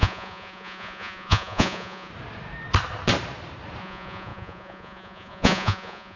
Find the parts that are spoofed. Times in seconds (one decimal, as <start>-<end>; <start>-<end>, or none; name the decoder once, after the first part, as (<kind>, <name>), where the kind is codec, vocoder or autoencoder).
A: 0.0-2.1 (vocoder, Vocos); 3.8-6.2